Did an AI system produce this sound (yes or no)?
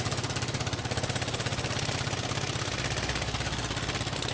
no